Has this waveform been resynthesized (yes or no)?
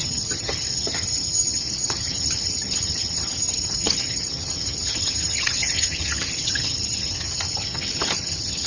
yes